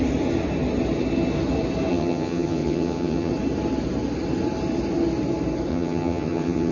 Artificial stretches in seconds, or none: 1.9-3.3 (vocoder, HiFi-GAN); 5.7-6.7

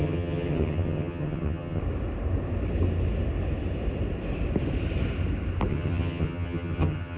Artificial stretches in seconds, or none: 0.0-1.8 (vocoder, HiFi-GAN); 5.7-7.2

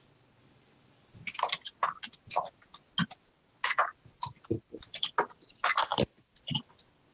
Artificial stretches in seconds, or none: none

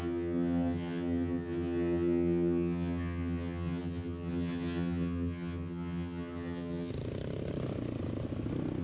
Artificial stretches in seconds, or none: 0.0-6.9 (vocoder, HiFi-GAN)

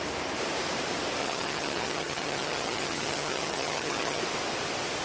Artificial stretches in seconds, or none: 1.2-4.2 (vocoder, HiFi-GAN)

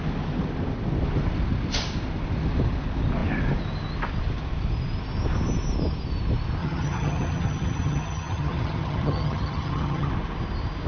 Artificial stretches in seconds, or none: 6.6-10.1 (vocoder, HiFi-GAN)

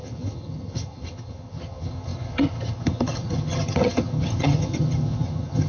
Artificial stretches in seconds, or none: 0.0-5.7 (vocoder, HiFi-GAN)

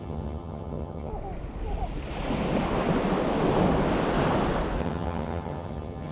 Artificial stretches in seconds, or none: 0.0-1.1 (vocoder, HiFi-GAN); 4.8-6.1